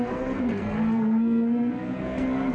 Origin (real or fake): fake